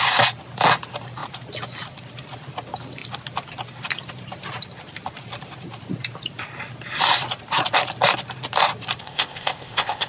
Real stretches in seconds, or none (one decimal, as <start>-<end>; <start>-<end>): 0.0-9.0